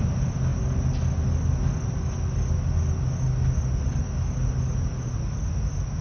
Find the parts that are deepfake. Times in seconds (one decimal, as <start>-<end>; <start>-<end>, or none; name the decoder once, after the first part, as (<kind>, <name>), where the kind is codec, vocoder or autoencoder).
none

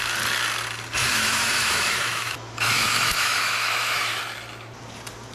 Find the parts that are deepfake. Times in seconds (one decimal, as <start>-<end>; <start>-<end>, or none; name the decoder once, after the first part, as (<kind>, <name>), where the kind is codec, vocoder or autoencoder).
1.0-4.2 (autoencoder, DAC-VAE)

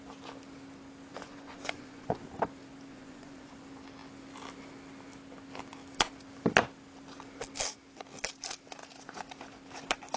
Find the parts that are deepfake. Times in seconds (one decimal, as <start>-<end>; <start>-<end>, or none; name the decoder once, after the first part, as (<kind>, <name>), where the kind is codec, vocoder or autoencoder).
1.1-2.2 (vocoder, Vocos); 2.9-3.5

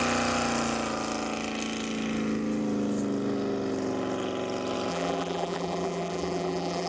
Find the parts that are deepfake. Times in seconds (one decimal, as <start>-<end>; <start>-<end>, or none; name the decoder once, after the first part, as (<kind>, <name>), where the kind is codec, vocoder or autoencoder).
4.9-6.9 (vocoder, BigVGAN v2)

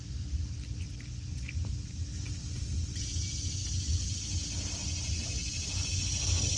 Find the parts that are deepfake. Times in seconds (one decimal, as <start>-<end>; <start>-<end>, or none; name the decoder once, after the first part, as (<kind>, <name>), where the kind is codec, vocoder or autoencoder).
none

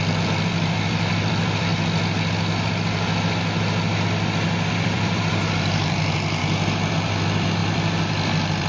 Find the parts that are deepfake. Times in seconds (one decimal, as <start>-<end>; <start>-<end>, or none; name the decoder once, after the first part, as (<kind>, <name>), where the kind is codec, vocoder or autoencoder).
0.0-1.7 (vocoder, BigVGAN v2); 4.7-6.4; 6.9-8.7